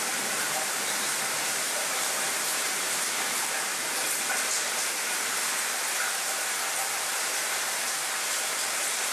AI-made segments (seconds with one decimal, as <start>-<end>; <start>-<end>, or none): 0.0-3.7; 7.6-9.1